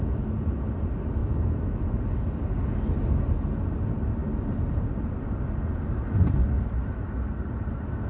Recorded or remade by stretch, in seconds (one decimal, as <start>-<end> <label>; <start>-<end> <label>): 0.0-1.2 recorded; 1.2-1.8 remade; 1.8-8.1 recorded